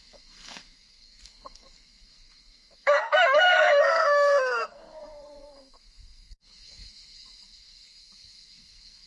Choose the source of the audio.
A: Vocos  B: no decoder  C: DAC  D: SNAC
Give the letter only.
D